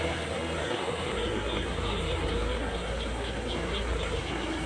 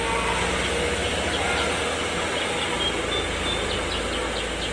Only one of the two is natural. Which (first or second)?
second